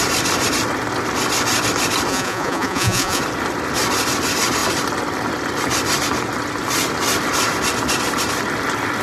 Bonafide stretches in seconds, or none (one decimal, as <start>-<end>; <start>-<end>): 0.0-2.1; 3.2-9.0